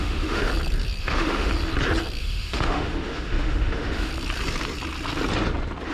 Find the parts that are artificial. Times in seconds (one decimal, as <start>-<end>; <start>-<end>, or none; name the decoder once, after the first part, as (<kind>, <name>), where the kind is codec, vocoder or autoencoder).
0.0-0.5 (autoencoder, DAC-VAE); 1.0-1.5; 2.2-4.1